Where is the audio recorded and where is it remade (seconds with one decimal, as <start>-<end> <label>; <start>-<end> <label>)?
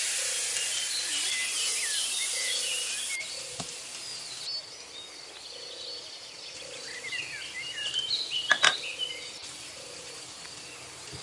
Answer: 0.0-11.2 recorded